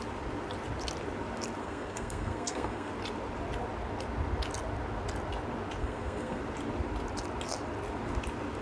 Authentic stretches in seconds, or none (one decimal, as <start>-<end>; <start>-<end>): 0.0-1.6; 2.9-5.8; 6.4-8.6